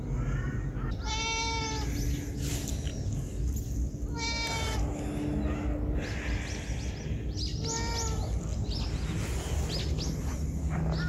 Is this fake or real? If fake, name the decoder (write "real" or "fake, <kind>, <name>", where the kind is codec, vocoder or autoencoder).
real